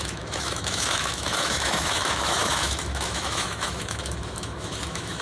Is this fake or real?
fake